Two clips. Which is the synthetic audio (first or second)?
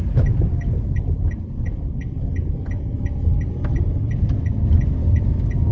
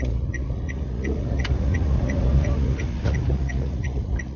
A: second